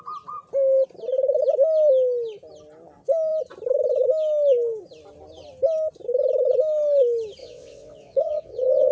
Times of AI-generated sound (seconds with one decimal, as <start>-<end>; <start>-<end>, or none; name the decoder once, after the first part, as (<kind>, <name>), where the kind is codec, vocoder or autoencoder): 7.4-8.9 (vocoder, WaveNeXt)